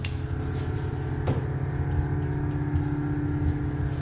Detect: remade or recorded recorded